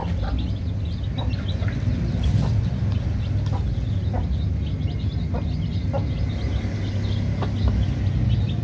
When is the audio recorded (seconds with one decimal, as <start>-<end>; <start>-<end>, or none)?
0.0-8.6